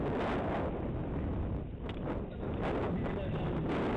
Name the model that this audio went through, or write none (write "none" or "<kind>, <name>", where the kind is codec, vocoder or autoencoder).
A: none